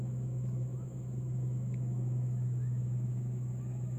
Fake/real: fake